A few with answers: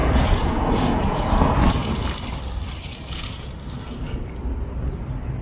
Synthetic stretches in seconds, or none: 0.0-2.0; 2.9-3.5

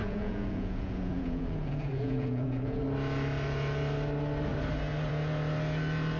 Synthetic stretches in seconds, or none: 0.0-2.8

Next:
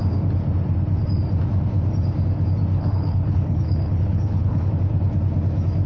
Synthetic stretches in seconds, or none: 2.7-4.7